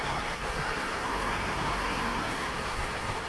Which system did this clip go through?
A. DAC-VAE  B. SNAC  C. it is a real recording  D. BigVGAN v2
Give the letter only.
B